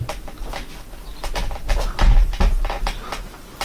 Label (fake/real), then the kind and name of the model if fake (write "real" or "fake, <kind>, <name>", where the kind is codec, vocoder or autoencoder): real